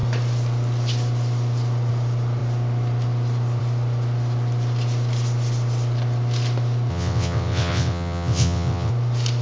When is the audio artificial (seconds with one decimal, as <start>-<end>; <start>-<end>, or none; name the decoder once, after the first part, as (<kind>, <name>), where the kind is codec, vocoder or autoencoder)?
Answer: 6.9-8.9 (vocoder, WaveNeXt)